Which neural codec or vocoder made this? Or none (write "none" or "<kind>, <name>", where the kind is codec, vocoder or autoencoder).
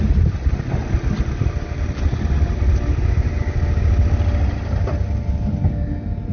none